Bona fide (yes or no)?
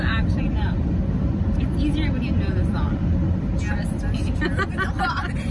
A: yes